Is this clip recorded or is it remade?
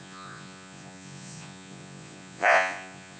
remade